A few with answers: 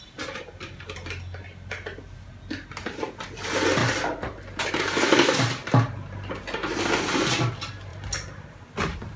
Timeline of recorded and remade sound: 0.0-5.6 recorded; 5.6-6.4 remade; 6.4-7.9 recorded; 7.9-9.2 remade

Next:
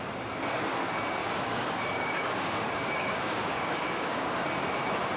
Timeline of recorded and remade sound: 0.0-1.2 recorded; 1.2-4.3 remade; 4.3-5.2 recorded

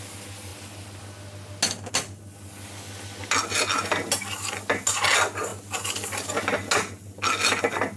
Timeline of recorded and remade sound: 0.0-8.0 recorded

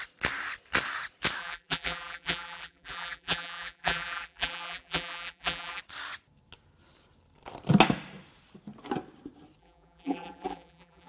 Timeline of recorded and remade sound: 0.0-1.4 recorded; 1.4-5.8 remade; 5.8-9.6 recorded; 9.6-11.1 remade